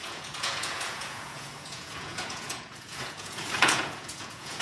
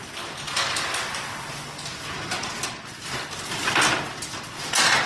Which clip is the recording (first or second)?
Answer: second